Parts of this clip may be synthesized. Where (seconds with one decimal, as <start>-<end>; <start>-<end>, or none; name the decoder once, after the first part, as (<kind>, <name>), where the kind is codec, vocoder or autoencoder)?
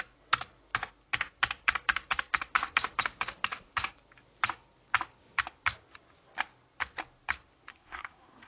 7.7-8.5 (codec, SNAC)